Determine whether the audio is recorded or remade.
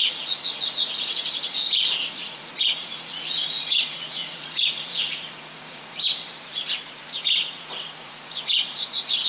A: remade